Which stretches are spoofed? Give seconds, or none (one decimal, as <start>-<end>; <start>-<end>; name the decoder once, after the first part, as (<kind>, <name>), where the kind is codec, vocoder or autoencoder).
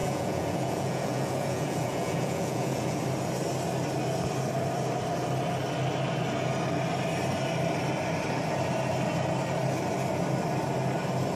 0.0-3.0 (vocoder, Vocos)